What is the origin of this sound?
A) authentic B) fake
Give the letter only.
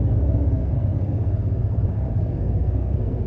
B